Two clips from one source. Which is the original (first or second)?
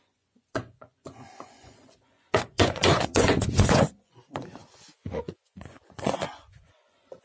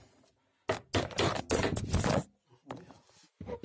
second